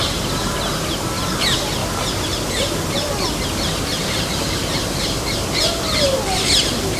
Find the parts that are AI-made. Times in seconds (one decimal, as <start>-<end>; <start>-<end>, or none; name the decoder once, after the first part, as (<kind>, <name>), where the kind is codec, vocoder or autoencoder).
none